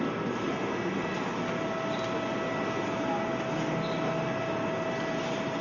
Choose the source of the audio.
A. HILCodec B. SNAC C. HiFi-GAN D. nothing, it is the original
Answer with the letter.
D